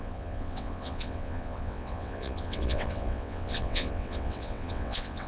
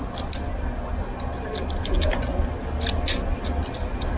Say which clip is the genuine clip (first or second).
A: second